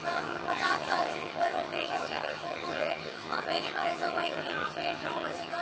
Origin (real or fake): fake